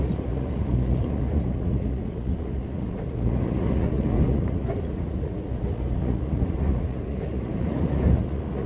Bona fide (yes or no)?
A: no